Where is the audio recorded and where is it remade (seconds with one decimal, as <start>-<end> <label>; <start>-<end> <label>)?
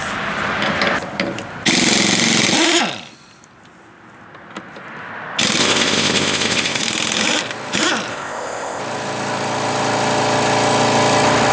0.0-5.6 recorded; 5.6-6.8 remade; 6.8-8.1 recorded; 8.1-8.8 remade; 8.8-11.5 recorded